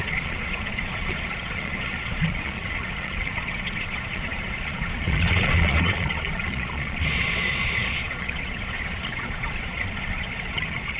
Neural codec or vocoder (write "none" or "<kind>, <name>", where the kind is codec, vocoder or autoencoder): vocoder, Vocos